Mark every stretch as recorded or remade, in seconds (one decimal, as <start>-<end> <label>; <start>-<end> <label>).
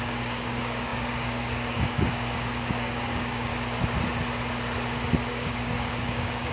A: 0.0-3.5 remade; 3.5-5.3 recorded; 5.3-6.5 remade